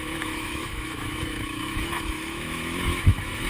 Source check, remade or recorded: remade